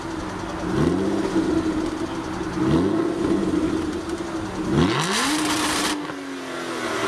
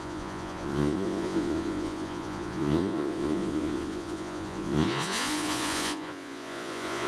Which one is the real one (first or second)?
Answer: first